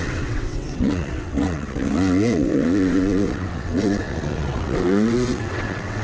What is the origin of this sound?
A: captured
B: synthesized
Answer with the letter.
B